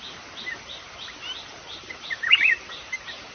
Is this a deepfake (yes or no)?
no